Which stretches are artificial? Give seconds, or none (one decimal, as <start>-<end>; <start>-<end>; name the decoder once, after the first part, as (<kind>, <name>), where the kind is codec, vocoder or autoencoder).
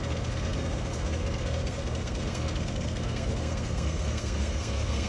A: 0.0-5.1 (codec, SNAC)